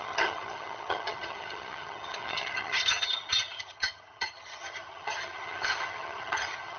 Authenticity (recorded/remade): remade